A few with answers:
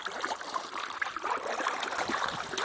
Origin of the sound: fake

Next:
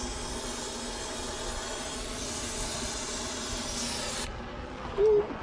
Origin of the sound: real